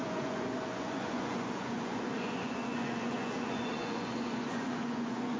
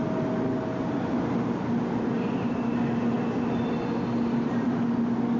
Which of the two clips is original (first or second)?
second